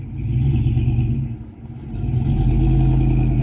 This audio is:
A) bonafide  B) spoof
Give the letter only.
A